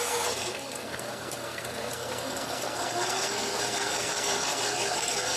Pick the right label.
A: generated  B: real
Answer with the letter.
A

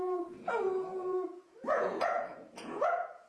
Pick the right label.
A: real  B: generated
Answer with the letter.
B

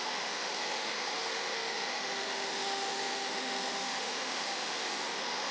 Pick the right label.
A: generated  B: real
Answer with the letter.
A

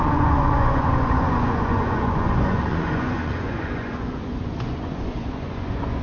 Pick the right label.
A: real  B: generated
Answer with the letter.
B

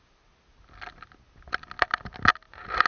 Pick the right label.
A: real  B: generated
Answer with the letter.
A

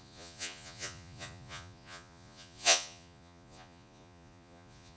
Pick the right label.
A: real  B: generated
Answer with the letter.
B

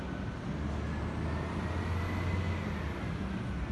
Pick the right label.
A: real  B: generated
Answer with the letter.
A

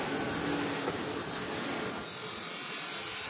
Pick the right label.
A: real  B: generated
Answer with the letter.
A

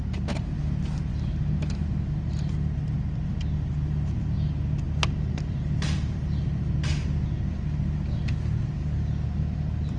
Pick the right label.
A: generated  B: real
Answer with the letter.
B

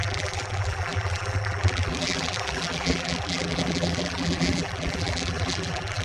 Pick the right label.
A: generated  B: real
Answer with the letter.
A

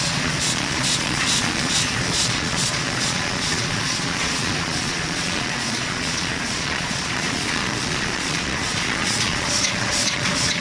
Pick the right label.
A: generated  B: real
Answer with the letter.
A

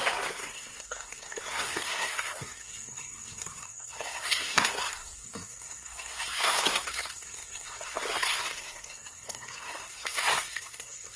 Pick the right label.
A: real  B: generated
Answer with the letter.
B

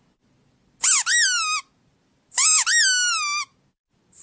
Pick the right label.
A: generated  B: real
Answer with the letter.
B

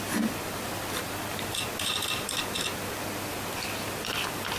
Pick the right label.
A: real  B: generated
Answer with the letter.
B